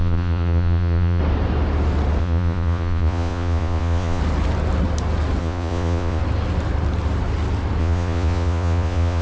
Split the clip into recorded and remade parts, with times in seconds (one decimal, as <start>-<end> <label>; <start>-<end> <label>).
0.0-1.2 remade; 1.2-2.2 recorded; 2.2-4.2 remade; 4.2-5.4 recorded; 5.4-6.2 remade; 6.2-7.8 recorded; 7.8-9.2 remade